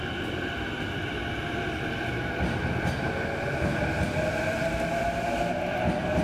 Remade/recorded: recorded